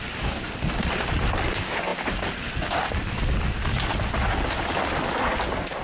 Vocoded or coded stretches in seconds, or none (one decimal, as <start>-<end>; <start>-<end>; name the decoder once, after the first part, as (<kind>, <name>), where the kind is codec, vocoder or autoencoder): none